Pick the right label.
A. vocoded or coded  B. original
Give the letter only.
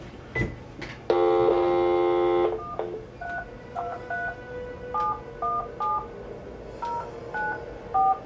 B